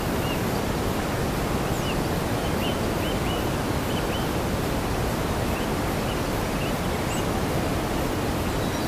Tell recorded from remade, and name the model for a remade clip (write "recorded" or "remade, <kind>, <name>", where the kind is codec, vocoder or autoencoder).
recorded